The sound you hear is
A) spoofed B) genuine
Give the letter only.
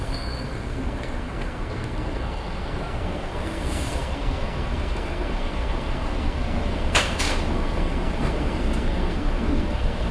A